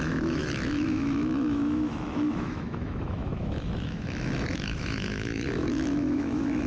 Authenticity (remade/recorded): remade